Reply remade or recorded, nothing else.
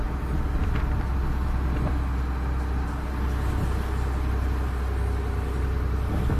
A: recorded